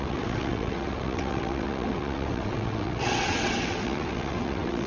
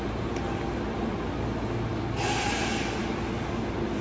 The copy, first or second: first